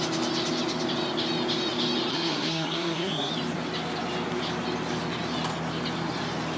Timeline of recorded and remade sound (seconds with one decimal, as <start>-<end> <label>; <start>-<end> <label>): 0.0-2.1 recorded; 2.1-3.3 remade; 3.3-6.6 recorded